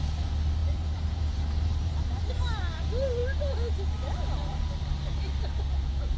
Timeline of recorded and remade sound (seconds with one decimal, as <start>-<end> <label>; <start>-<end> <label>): 0.0-0.6 recorded; 0.6-2.3 remade; 2.3-6.2 recorded